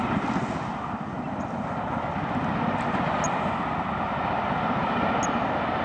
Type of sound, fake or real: real